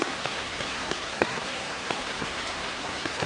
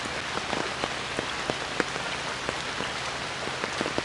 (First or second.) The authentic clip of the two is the second